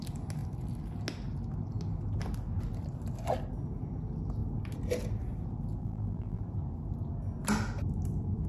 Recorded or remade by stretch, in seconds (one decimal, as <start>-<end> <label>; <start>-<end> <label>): 0.0-5.8 recorded; 5.8-6.4 remade; 6.4-8.5 recorded